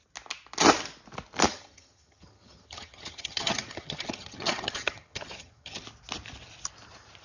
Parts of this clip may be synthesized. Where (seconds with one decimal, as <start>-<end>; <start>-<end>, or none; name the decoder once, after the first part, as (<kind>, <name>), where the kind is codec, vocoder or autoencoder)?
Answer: 1.5-5.8 (vocoder, HiFi-GAN)